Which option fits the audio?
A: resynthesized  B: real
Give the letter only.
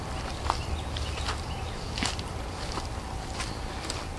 B